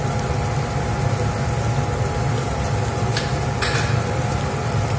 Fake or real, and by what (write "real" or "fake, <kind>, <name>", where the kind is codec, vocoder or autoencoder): real